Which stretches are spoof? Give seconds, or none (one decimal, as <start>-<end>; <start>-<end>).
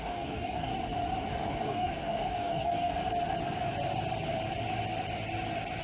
0.0-0.7; 1.3-2.9